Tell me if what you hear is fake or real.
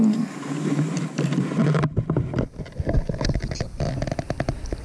real